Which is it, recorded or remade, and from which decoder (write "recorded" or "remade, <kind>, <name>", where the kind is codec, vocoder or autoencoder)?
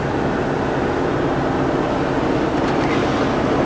recorded